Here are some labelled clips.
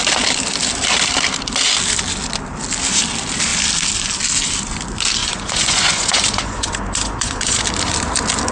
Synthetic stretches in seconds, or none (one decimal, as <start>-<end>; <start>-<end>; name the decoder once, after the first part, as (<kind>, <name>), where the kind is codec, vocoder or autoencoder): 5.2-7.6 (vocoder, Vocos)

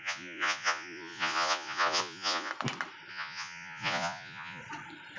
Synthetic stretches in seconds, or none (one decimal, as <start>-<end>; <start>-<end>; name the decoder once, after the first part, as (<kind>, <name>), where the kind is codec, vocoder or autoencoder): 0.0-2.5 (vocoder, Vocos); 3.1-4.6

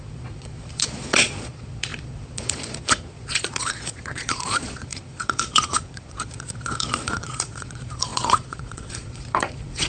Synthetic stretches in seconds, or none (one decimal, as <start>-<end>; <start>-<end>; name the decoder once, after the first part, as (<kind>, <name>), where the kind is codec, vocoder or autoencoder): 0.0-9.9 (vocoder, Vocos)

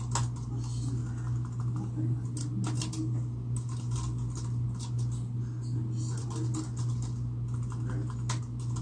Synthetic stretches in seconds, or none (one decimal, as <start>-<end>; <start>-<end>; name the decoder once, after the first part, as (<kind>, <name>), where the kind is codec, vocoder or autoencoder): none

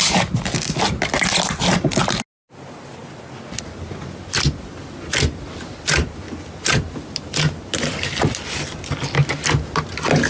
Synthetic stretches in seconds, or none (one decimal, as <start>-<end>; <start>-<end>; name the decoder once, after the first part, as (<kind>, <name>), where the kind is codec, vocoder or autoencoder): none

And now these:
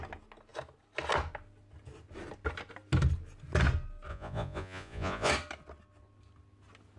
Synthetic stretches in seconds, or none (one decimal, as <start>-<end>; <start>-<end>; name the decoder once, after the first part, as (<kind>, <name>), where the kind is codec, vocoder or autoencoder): 4.1-5.3 (vocoder, Vocos)